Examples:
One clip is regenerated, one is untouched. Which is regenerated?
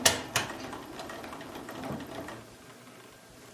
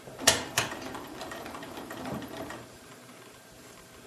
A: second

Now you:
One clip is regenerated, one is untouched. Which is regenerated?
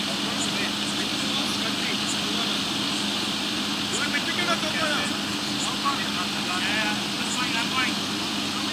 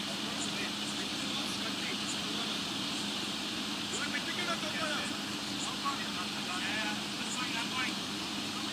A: second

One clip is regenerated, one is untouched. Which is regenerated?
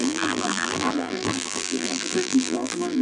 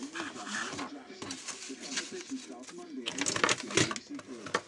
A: first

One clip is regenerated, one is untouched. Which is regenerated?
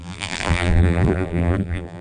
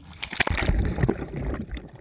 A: first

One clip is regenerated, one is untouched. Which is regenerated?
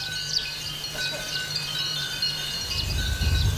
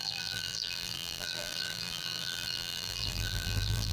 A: second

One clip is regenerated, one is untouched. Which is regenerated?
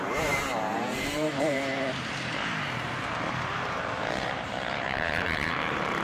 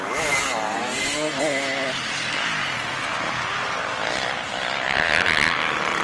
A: first